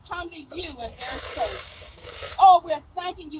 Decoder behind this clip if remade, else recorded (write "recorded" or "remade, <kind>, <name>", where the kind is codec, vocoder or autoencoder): remade, codec, DAC